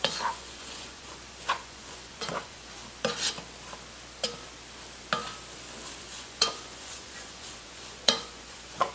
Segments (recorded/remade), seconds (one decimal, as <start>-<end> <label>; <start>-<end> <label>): 0.0-2.8 remade; 2.8-6.0 recorded; 6.0-8.9 remade